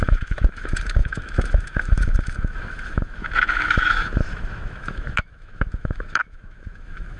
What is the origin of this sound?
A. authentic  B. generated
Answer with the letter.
B